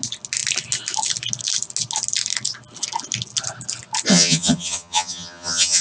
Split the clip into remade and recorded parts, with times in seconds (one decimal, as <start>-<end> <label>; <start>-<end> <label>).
0.0-4.1 recorded; 4.1-5.8 remade